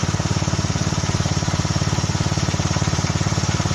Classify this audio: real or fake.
fake